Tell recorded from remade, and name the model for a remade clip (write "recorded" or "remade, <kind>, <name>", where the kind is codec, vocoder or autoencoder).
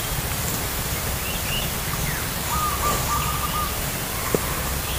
recorded